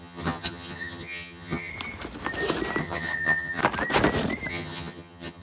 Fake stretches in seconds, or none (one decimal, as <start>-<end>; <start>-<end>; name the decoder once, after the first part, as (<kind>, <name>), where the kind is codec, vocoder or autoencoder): 0.0-1.7 (vocoder, HiFi-GAN); 2.8-3.6; 4.5-5.4